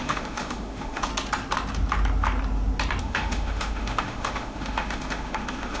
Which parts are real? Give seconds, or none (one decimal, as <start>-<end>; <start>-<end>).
1.1-3.0